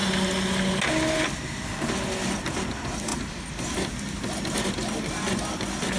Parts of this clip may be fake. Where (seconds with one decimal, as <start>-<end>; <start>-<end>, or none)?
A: none

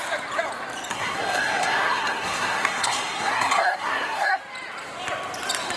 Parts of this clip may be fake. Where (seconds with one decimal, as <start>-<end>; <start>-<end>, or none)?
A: 0.9-4.4

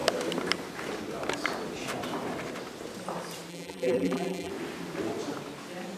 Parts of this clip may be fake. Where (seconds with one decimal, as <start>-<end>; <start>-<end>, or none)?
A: 3.5-4.5